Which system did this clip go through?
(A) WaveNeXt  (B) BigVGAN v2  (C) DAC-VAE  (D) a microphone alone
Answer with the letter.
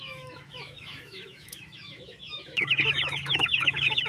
C